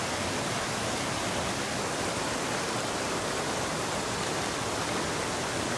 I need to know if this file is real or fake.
real